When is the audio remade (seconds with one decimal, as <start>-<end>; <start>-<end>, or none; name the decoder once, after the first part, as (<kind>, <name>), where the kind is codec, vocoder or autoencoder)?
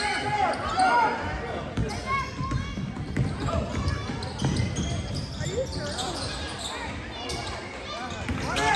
none